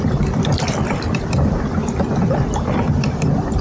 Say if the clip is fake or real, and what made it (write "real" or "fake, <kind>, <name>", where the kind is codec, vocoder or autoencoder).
fake, vocoder, BigVGAN v2